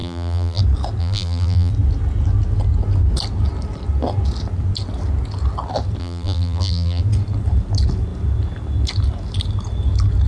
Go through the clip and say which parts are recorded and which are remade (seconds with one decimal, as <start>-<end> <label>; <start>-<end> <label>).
0.0-0.6 remade; 0.6-1.0 recorded; 1.0-1.7 remade; 1.7-6.0 recorded; 6.0-7.0 remade; 7.0-10.3 recorded

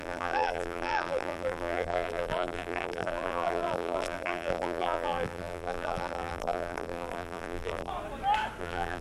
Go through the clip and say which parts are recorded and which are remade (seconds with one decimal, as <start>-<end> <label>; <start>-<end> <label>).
0.0-7.9 remade; 7.9-8.6 recorded; 8.6-9.0 remade

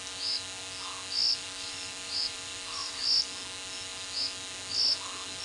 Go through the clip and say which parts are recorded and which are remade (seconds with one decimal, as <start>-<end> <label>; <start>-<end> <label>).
0.0-1.2 recorded; 1.2-3.1 remade; 3.1-5.4 recorded

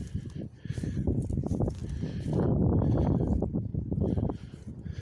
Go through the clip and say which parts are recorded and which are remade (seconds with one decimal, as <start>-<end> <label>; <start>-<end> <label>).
0.0-1.8 remade; 1.8-2.9 recorded; 2.9-5.0 remade